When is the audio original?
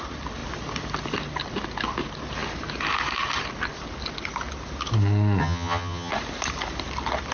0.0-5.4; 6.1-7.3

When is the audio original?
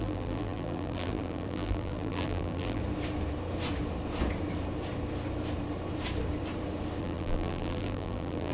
2.8-7.0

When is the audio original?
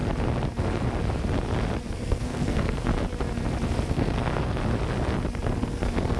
0.0-1.9; 2.9-3.9; 4.6-5.6